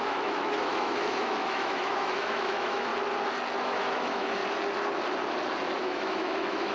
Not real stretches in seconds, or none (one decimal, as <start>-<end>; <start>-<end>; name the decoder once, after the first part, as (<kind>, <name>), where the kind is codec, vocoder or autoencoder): 0.0-2.9 (autoencoder, DAC-VAE); 3.6-4.4; 5.8-6.7

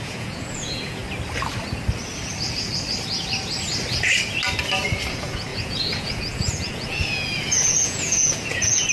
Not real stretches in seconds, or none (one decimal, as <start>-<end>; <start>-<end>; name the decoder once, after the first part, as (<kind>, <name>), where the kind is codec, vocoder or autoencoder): 0.0-1.0 (vocoder, Vocos); 5.1-8.9

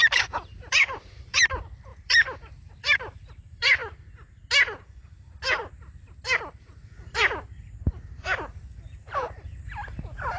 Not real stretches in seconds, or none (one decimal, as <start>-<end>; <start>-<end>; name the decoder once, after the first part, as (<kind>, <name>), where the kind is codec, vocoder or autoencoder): 0.0-3.8 (vocoder, BigVGAN v2); 6.2-10.4

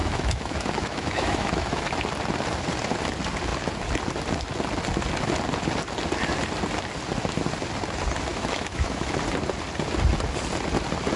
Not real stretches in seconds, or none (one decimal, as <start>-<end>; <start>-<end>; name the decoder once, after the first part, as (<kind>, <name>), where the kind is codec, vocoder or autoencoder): 0.0-1.9 (autoencoder, DAC-VAE); 8.3-9.1